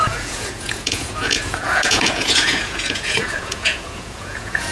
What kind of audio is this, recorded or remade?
remade